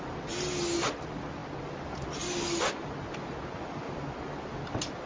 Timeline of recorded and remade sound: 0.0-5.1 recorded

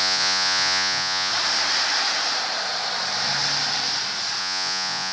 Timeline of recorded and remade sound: 0.0-1.3 remade; 1.3-4.4 recorded; 4.4-5.1 remade

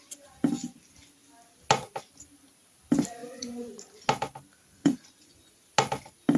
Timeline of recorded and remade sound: 0.0-3.2 recorded; 3.2-3.8 remade; 3.8-4.7 recorded; 4.7-5.7 remade; 5.7-6.4 recorded